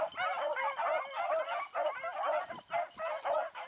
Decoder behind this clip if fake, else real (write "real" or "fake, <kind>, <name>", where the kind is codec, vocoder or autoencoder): real